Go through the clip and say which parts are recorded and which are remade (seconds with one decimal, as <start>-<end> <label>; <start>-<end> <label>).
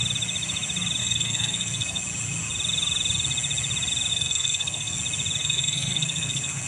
0.0-1.0 recorded; 1.0-2.0 remade; 2.0-4.1 recorded; 4.1-5.0 remade; 5.0-5.4 recorded; 5.4-6.7 remade